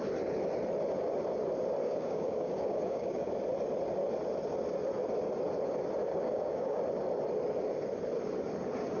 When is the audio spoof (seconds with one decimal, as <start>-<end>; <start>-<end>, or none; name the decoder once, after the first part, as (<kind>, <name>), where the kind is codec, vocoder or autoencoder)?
1.8-3.3 (codec, DAC); 6.1-6.8